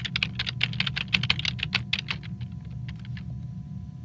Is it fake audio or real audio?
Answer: real